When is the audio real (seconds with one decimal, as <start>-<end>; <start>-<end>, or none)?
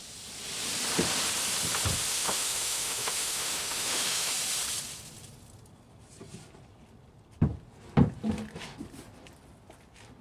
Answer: 0.0-2.1; 4.3-10.2